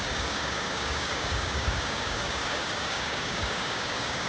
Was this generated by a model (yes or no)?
yes